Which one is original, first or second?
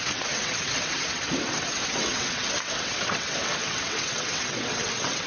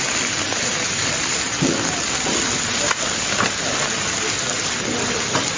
second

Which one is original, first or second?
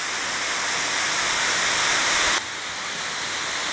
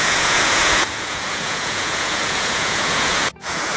first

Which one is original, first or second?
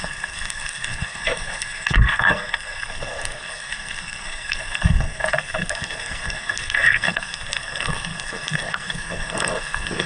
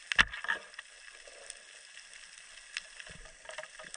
second